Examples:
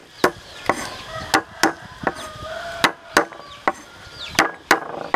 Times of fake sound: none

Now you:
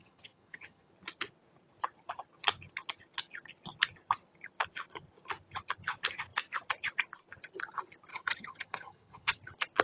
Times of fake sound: 0.0-0.9 (vocoder, HiFi-GAN); 8.1-9.4